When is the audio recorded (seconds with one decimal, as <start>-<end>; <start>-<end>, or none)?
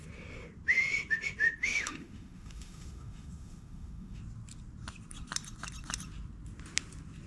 0.0-1.6; 4.2-7.3